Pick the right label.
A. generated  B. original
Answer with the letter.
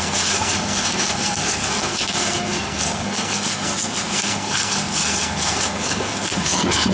A